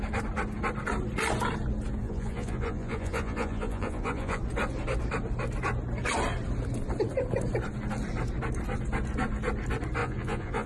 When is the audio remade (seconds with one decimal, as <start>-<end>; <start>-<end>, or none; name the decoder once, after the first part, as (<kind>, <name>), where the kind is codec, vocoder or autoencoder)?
2.0-4.4 (vocoder, Vocos); 10.0-10.7